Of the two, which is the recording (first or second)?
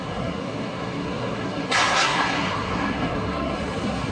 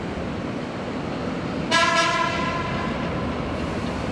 second